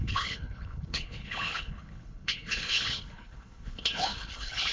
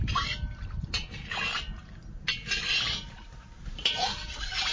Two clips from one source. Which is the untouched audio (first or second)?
second